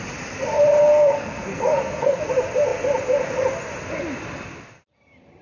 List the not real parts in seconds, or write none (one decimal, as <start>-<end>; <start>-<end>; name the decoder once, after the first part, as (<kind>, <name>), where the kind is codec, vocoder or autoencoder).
0.9-2.2 (codec, SNAC)